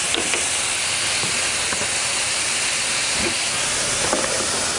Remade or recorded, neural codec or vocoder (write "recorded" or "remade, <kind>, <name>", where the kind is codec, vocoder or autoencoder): recorded